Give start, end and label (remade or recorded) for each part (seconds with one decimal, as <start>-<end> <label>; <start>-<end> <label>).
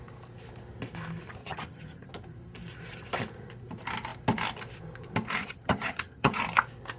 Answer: 0.0-1.4 recorded; 1.4-2.1 remade; 2.1-5.4 recorded; 5.4-6.4 remade; 6.4-7.0 recorded